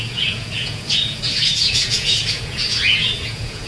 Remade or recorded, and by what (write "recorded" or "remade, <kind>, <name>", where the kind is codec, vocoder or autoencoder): remade, vocoder, Vocos